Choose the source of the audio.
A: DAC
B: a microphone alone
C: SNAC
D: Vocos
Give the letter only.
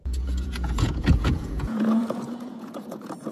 D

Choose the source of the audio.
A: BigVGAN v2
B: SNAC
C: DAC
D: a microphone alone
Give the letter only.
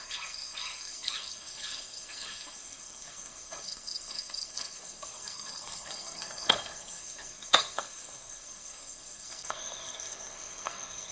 B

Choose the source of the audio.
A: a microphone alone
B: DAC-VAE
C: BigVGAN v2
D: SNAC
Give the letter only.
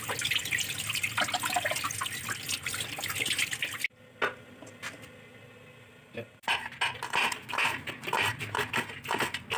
A